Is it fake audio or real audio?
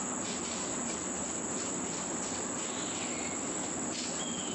real